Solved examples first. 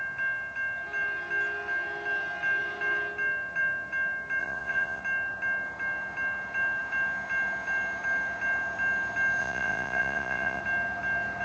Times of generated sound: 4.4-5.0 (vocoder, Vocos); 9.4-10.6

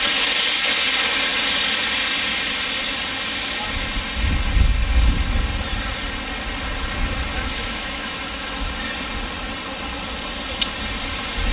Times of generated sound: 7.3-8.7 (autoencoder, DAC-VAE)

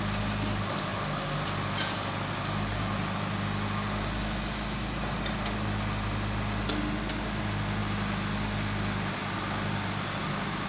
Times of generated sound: none